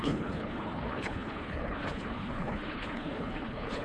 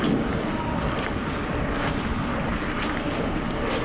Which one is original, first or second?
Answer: second